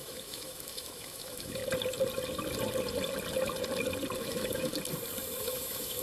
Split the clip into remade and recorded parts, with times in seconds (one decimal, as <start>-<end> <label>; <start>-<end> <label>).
0.0-1.6 remade; 1.6-4.2 recorded; 4.2-4.7 remade; 4.7-5.4 recorded; 5.4-6.0 remade